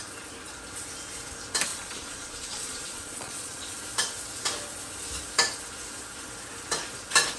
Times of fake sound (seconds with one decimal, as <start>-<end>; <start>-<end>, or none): 1.7-3.8